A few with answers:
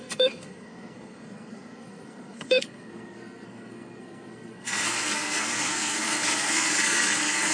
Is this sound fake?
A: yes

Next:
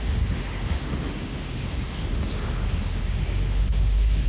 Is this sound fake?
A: yes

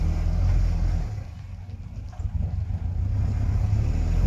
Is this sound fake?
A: no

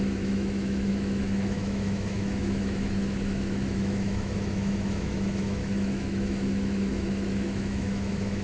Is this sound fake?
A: yes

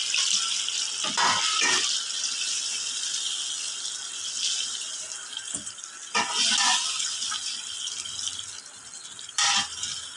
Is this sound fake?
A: no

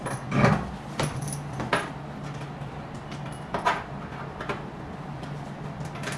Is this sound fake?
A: no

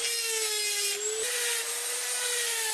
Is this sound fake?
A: no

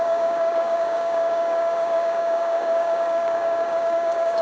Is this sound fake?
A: yes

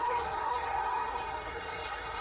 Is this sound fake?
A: yes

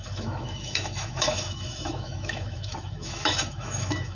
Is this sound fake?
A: yes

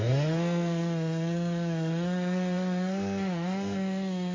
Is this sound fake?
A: yes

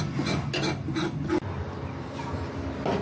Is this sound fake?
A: no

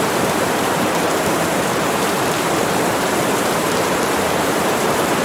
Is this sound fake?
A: yes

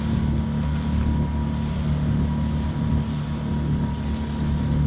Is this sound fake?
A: no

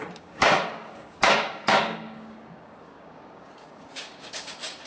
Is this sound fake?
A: yes